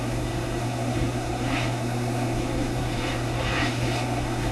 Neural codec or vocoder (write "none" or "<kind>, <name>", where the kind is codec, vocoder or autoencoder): codec, SNAC